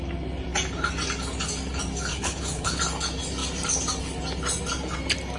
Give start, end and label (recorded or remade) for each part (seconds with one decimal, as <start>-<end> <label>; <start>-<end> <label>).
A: 0.0-2.1 recorded; 2.1-2.8 remade; 2.8-5.4 recorded